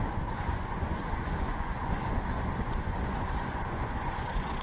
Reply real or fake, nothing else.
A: fake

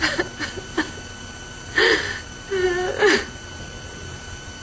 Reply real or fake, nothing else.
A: real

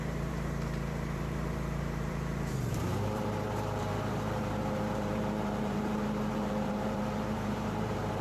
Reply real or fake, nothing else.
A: fake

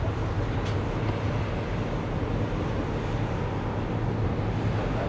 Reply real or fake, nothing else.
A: real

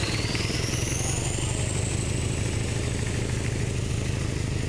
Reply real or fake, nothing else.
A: real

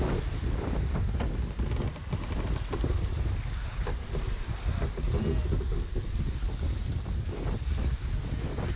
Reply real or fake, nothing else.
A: real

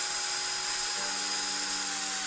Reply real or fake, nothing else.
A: real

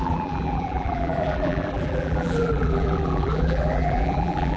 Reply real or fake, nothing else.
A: fake